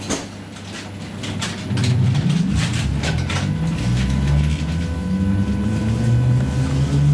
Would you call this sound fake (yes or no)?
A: no